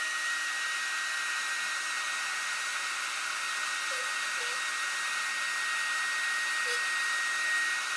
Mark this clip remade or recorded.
recorded